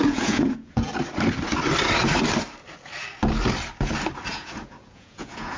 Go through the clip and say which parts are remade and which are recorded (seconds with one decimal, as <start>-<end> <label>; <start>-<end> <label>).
0.0-0.9 remade; 0.9-4.3 recorded; 4.3-5.6 remade